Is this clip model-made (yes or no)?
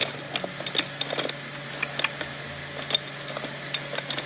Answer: no